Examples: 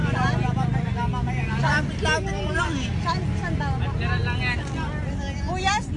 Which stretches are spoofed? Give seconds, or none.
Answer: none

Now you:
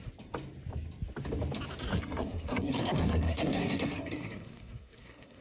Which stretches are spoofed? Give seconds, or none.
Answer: 1.9-5.4 (codec, SNAC)

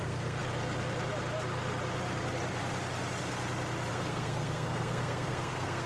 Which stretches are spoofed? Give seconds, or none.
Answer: 0.0-0.4 (codec, SNAC); 3.9-5.9

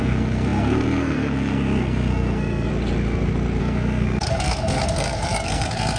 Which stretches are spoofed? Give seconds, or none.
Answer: 0.0-2.7 (codec, SNAC); 3.6-6.0